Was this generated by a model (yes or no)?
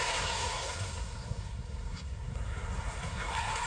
yes